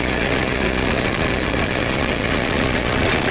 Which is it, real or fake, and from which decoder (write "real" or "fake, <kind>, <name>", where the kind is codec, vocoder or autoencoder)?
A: fake, vocoder, Vocos